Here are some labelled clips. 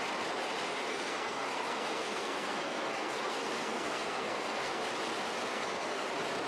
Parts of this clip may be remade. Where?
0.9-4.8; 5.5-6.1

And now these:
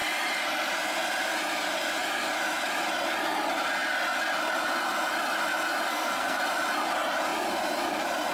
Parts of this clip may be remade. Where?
5.9-6.4

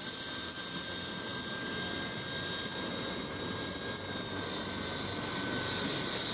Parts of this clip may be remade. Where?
none

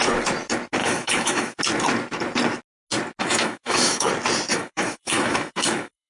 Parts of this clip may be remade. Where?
0.8-1.6; 3.2-4.1; 4.5-6.1

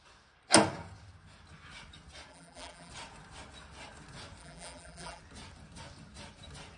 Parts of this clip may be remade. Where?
2.3-2.9; 4.4-5.2